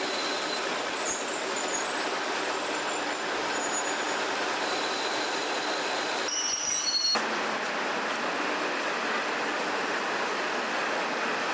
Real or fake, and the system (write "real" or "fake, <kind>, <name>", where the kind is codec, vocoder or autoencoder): real